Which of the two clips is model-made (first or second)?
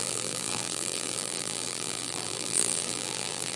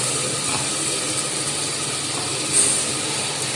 first